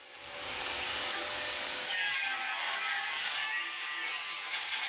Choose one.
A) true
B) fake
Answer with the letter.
B